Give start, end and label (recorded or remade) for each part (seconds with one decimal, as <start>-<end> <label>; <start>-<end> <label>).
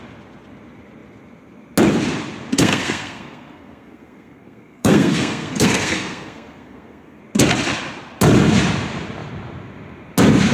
0.0-2.6 recorded; 2.6-7.2 remade; 7.2-10.5 recorded